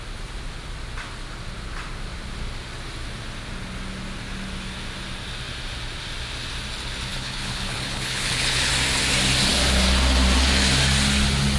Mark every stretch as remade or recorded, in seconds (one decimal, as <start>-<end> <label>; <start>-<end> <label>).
0.0-7.1 recorded; 7.1-8.7 remade; 8.7-11.6 recorded